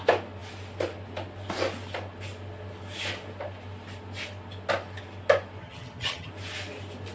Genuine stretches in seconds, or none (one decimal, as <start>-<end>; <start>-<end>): 0.0-5.6; 6.3-7.1